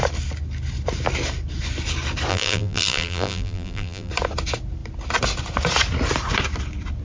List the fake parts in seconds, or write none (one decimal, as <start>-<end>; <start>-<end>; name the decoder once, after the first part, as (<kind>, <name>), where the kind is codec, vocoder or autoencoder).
2.3-4.1 (vocoder, BigVGAN v2)